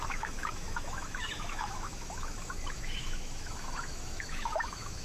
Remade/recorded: remade